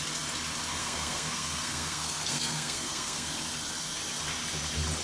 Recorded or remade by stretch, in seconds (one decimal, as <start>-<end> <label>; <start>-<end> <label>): 0.0-0.8 recorded; 0.8-3.3 remade; 3.3-5.0 recorded